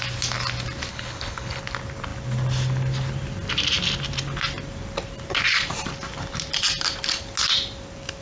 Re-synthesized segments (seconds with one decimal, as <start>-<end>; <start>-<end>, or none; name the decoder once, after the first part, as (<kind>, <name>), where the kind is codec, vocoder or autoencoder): 0.9-1.6 (codec, HILCodec)